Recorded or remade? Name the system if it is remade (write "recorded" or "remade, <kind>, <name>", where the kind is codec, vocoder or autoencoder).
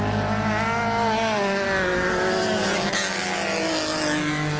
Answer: recorded